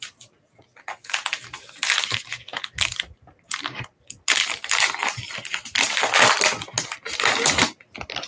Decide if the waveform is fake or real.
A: real